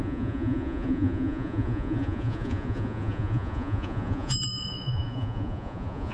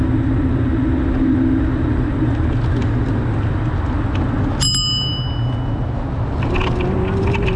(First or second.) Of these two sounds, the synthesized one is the first